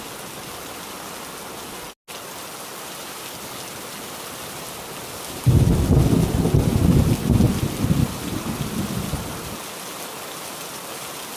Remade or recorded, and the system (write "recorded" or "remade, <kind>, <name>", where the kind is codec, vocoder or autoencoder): recorded